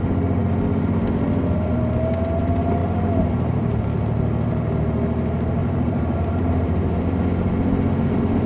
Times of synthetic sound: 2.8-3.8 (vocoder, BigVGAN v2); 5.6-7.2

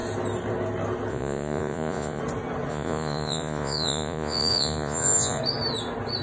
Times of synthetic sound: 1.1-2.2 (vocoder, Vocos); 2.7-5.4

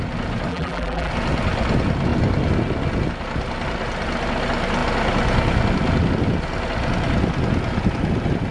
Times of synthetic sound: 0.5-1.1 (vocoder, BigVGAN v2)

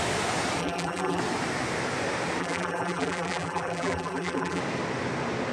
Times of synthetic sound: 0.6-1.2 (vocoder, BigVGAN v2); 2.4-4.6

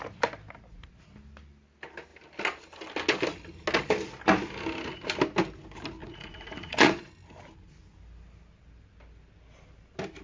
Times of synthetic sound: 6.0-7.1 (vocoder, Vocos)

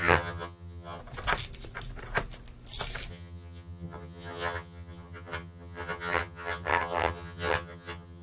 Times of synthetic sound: 0.0-1.0 (vocoder, HiFi-GAN); 3.1-8.2

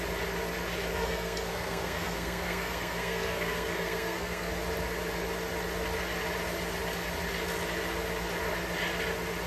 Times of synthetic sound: 0.9-4.5 (codec, SNAC)

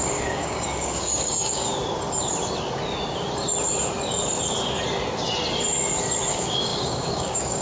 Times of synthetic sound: 0.0-1.7 (codec, DAC); 6.3-7.6